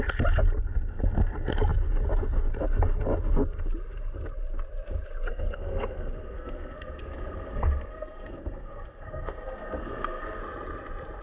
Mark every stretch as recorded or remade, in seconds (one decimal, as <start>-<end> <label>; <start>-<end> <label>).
0.0-5.3 recorded; 5.3-10.4 remade; 10.4-11.2 recorded